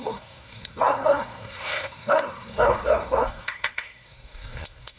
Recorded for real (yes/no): no